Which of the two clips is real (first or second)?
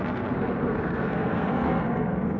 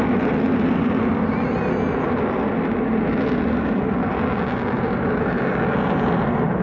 second